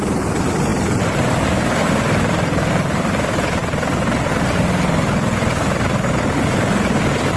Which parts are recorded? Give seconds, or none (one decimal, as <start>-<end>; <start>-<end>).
0.0-7.4